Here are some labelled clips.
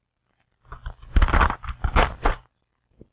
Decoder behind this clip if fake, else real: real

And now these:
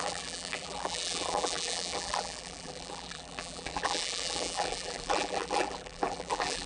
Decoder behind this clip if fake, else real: fake, vocoder, BigVGAN v2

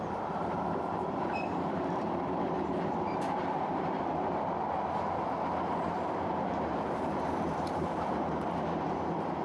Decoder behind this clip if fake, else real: fake, vocoder, BigVGAN v2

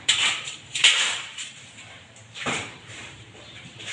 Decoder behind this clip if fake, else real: fake, vocoder, BigVGAN v2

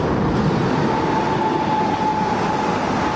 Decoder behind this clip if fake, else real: real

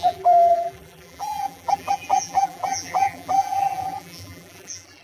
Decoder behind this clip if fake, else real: fake, vocoder, BigVGAN v2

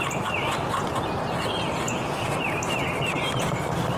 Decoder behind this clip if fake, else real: fake, vocoder, BigVGAN v2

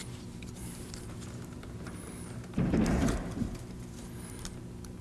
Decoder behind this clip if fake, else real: fake, vocoder, BigVGAN v2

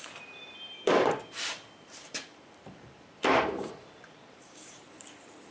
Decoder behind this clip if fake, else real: fake, vocoder, BigVGAN v2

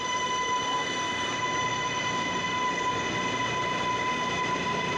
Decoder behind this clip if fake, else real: real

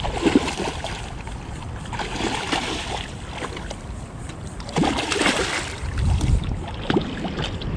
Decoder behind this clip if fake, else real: fake, vocoder, BigVGAN v2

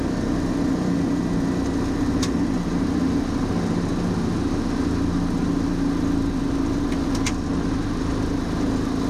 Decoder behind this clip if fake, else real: real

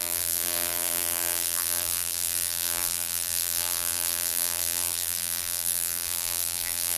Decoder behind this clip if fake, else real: fake, vocoder, BigVGAN v2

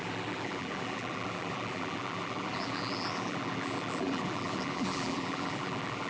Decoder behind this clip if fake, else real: fake, vocoder, BigVGAN v2